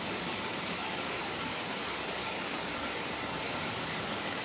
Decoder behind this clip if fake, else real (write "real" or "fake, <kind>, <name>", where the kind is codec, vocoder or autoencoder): fake, codec, DAC